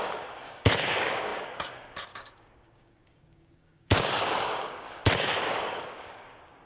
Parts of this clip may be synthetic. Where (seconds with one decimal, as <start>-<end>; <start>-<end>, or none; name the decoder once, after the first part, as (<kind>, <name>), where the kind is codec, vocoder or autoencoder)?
0.0-5.0 (codec, DAC); 5.5-6.7